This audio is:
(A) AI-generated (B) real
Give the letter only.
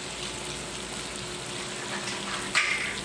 B